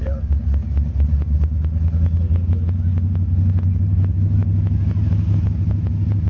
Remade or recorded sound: recorded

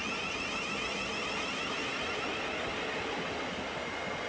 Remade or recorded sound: recorded